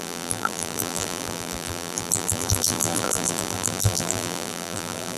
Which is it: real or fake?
fake